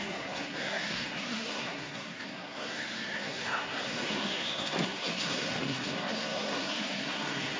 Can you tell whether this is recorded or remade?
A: remade